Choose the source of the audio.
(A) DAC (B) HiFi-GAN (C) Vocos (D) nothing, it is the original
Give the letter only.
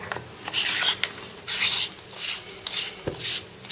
D